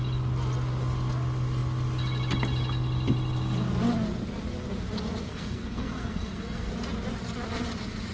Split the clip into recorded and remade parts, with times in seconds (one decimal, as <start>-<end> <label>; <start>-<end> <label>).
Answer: 0.0-5.3 recorded; 5.3-6.7 remade; 6.7-8.1 recorded